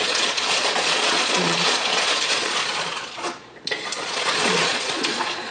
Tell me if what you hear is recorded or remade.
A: remade